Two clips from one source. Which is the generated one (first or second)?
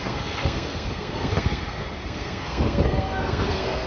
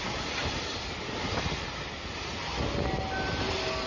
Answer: first